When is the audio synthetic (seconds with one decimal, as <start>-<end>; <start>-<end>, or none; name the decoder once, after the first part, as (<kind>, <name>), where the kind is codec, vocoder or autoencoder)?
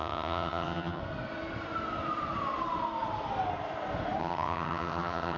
0.0-1.0 (vocoder, HiFi-GAN); 4.2-5.4